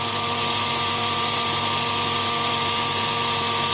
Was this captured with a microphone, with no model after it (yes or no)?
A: no